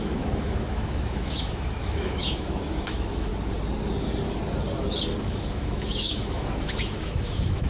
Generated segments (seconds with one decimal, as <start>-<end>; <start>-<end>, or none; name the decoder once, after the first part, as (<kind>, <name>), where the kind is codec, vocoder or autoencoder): 0.0-3.3 (autoencoder, DAC-VAE); 5.2-7.7